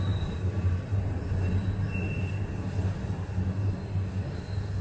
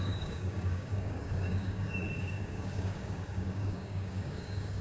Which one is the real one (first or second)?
first